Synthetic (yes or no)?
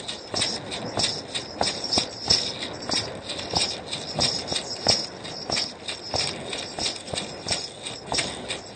no